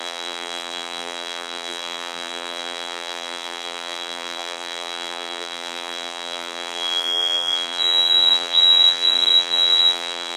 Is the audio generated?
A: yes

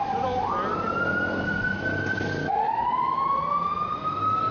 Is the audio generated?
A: no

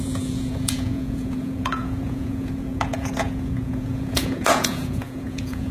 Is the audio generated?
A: yes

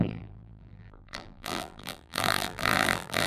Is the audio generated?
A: yes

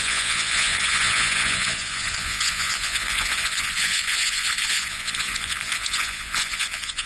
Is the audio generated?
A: yes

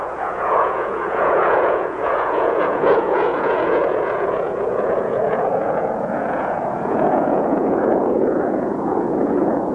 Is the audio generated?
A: yes